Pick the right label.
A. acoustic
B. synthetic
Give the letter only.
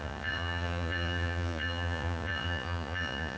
B